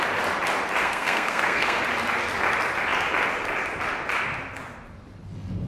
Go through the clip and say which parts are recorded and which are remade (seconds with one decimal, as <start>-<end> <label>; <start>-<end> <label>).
0.0-0.8 recorded; 0.8-1.8 remade; 1.8-5.7 recorded

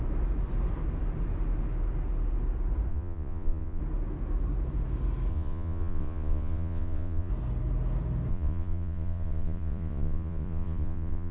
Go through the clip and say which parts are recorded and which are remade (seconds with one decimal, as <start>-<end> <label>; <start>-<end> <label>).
0.0-2.9 recorded; 2.9-3.8 remade; 3.8-5.3 recorded; 5.3-7.3 remade; 7.3-8.3 recorded; 8.3-11.3 remade